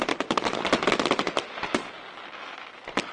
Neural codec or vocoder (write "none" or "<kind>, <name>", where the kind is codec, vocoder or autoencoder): none